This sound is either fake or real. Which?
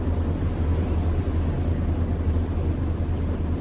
real